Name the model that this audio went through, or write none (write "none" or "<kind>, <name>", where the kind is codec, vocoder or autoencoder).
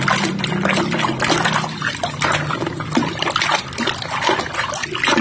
none